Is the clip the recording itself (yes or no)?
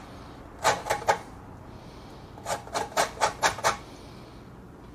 yes